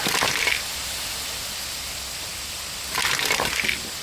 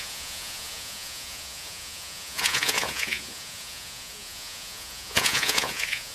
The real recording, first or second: first